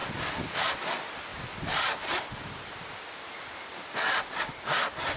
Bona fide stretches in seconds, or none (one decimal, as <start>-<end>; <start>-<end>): 0.0-5.2